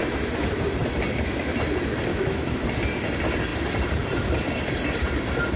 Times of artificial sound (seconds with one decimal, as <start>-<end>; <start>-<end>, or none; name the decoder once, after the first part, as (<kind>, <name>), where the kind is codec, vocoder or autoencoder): 2.1-2.7 (autoencoder, DAC-VAE)